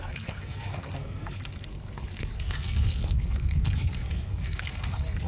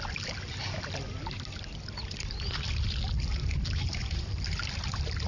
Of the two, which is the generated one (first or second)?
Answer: first